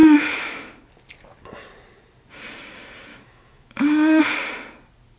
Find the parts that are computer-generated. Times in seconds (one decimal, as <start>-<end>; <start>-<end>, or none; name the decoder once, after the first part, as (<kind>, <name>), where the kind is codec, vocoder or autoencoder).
0.0-0.9 (autoencoder, DAC-VAE); 3.1-4.2